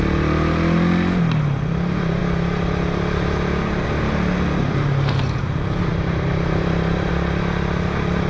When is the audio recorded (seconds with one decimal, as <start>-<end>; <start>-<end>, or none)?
0.0-5.9; 7.1-8.3